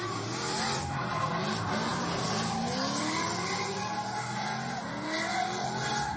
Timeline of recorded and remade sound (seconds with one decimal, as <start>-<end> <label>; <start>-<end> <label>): 0.0-6.2 recorded